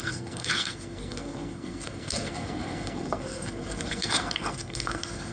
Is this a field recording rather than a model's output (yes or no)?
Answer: no